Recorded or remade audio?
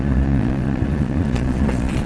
remade